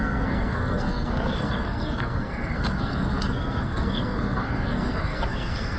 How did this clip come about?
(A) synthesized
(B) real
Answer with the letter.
A